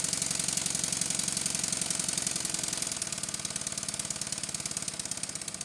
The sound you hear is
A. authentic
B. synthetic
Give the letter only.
A